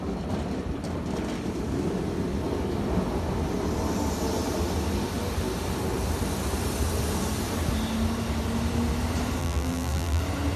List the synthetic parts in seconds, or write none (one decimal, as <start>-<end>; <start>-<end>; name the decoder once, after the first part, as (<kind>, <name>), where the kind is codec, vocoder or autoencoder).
9.4-10.2 (vocoder, BigVGAN v2)